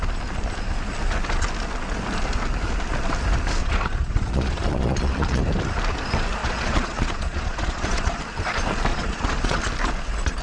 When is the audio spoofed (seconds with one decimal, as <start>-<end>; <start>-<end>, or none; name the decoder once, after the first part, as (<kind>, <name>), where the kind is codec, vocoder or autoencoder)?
3.6-5.4 (vocoder, Vocos); 6.4-8.2; 8.9-9.6